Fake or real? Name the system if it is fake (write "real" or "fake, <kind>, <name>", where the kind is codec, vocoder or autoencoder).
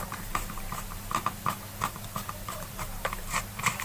fake, vocoder, BigVGAN v2